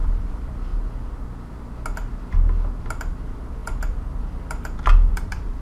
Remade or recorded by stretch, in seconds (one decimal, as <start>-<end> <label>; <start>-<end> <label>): 0.0-0.7 remade; 0.7-3.0 recorded; 3.0-5.6 remade